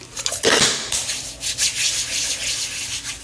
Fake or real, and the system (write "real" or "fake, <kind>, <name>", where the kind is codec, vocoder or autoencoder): real